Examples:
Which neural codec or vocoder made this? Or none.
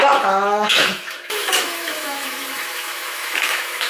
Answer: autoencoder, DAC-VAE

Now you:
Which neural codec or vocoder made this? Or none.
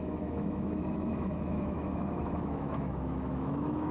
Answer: autoencoder, DAC-VAE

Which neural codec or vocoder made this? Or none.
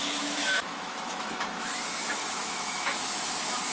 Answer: autoencoder, DAC-VAE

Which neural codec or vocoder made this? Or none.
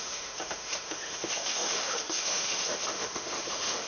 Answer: autoencoder, DAC-VAE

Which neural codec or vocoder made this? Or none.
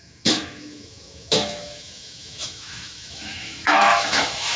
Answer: autoencoder, DAC-VAE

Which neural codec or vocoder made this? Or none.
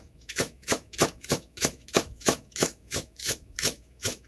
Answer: autoencoder, DAC-VAE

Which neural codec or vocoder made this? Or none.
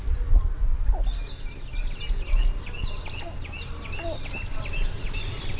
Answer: none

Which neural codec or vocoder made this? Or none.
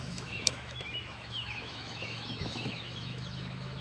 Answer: autoencoder, DAC-VAE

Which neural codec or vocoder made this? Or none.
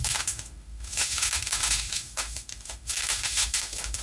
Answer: autoencoder, DAC-VAE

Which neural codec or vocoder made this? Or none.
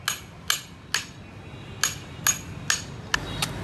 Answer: none